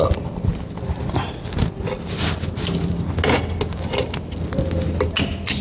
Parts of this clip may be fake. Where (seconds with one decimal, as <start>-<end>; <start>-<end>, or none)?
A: none